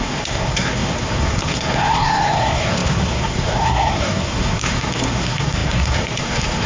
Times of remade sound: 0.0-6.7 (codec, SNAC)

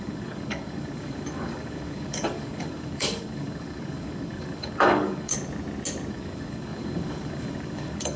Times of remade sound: 0.0-5.3 (codec, DAC); 6.1-8.2

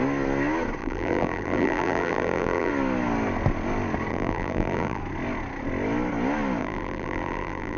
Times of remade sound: 0.8-2.7 (vocoder, BigVGAN v2); 4.1-5.0; 6.6-7.8

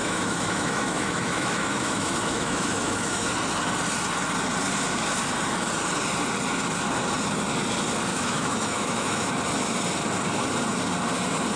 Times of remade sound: 0.0-3.3 (autoencoder, DAC-VAE); 8.1-9.3